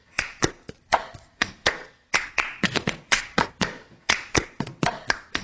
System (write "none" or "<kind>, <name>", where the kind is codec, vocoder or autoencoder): vocoder, Vocos